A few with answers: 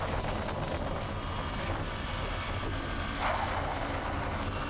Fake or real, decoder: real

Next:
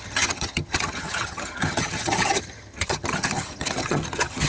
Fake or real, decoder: fake, vocoder, HiFi-GAN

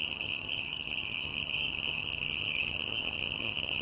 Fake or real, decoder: fake, vocoder, HiFi-GAN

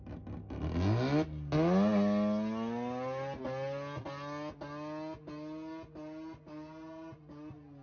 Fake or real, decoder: real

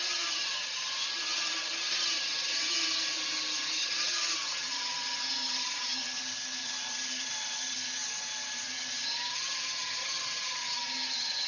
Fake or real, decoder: fake, vocoder, HiFi-GAN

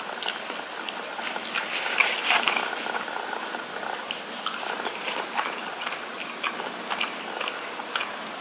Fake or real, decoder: real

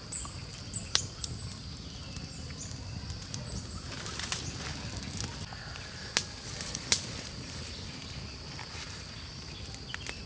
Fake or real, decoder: real